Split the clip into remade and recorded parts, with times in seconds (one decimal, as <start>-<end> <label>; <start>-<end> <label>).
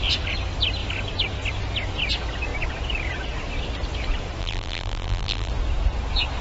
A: 0.0-4.4 recorded; 4.4-5.5 remade; 5.5-6.4 recorded